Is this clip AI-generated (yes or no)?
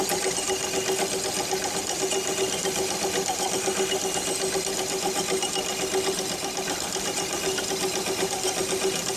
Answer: no